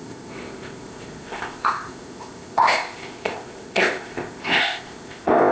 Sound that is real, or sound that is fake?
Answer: fake